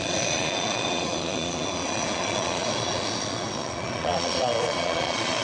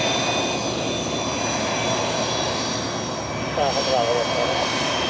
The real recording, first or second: second